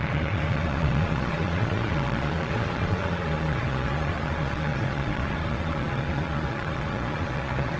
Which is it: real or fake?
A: fake